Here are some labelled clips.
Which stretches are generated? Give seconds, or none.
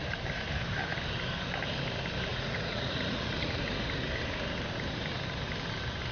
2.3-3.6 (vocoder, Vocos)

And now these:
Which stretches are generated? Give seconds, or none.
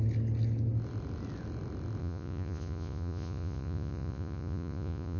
2.0-5.2 (vocoder, Vocos)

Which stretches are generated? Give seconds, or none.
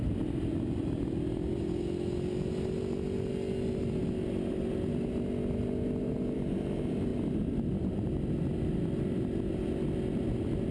none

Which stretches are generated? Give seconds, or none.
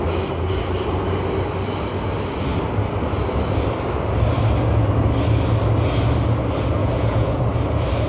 6.8-7.4 (vocoder, Vocos)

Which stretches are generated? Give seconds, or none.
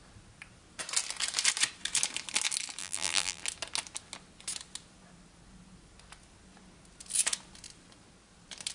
2.8-3.4 (vocoder, BigVGAN v2)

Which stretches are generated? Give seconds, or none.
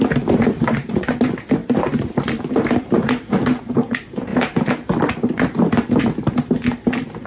0.0-7.3 (vocoder, BigVGAN v2)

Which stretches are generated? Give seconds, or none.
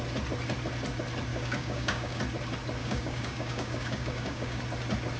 1.3-2.2 (codec, DAC); 2.8-4.6